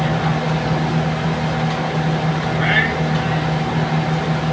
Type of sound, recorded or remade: recorded